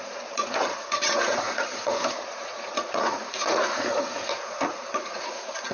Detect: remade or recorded remade